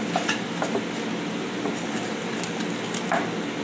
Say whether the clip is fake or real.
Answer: real